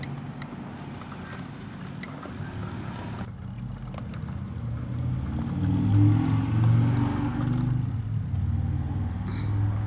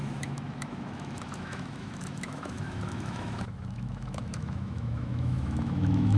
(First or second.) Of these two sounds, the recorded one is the first